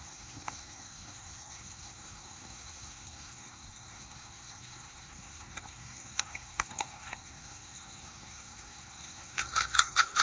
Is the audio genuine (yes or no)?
no